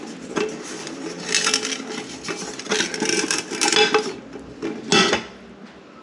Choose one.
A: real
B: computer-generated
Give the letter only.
A